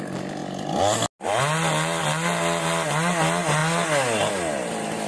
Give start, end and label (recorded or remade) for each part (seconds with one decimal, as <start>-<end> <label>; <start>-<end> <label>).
0.0-5.1 recorded